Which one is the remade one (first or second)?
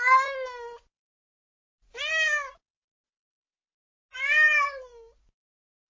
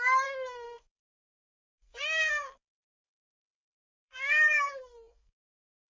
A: second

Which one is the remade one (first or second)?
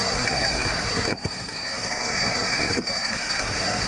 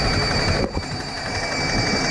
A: first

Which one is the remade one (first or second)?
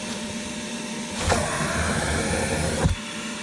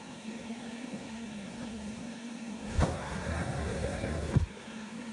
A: second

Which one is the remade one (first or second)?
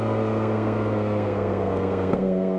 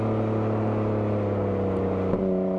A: first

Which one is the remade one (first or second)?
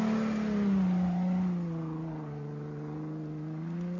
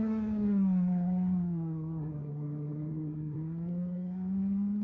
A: second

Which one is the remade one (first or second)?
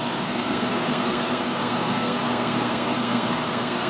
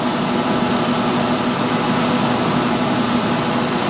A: first